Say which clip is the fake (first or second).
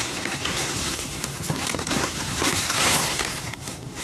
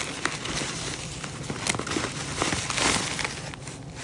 first